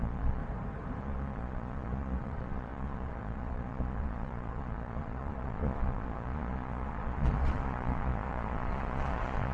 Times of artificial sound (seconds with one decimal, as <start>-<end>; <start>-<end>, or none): 0.0-0.4; 1.0-9.5